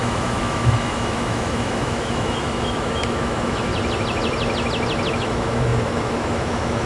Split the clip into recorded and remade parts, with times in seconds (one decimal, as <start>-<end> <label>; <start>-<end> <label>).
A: 0.0-3.7 remade; 3.7-5.1 recorded; 5.1-6.9 remade